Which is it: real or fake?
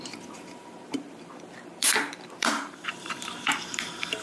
fake